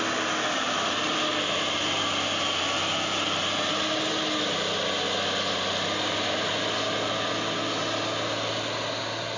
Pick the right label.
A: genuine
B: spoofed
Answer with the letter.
A